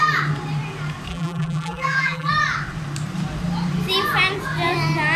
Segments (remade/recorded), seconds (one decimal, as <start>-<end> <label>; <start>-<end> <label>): 0.0-1.1 recorded; 1.1-2.3 remade; 2.3-5.2 recorded